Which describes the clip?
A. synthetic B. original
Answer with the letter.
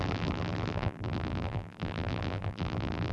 A